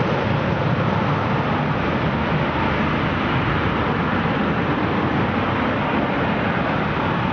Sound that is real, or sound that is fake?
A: real